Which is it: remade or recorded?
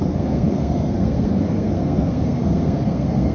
remade